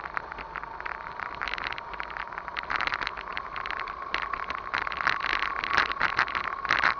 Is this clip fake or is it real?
real